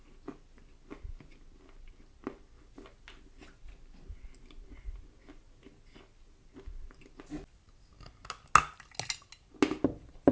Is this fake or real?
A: real